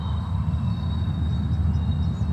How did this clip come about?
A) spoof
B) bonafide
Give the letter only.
B